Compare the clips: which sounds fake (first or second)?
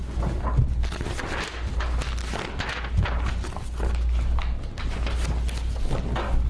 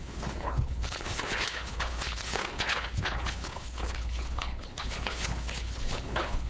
second